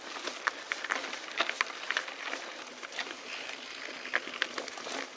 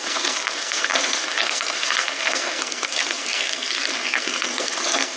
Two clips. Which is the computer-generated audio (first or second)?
second